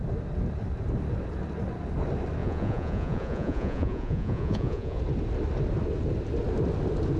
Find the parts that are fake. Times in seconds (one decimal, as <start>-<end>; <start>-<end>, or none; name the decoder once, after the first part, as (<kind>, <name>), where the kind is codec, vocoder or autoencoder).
2.4-5.0 (vocoder, Vocos)